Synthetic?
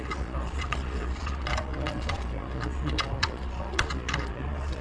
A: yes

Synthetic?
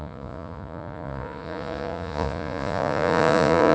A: yes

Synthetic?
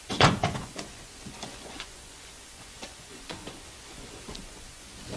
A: yes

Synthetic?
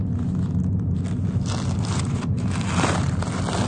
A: no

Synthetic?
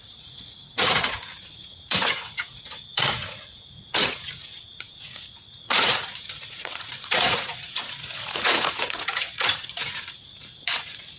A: yes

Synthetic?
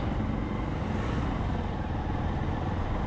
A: no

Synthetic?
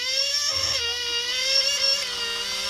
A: no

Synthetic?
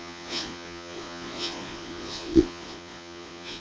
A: yes